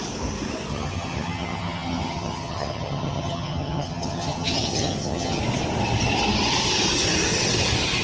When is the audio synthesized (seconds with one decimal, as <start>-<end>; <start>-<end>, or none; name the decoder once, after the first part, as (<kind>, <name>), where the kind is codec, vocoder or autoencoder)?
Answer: 0.7-5.4 (vocoder, HiFi-GAN)